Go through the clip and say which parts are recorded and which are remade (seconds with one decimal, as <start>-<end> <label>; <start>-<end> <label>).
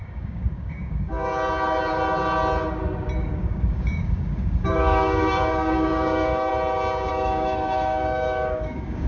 0.0-1.3 remade; 1.3-3.2 recorded; 3.2-6.5 remade; 6.5-7.1 recorded; 7.1-9.1 remade